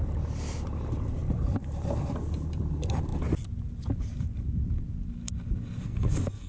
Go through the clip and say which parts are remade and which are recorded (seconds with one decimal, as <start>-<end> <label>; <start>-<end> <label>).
0.0-5.8 recorded; 5.8-6.5 remade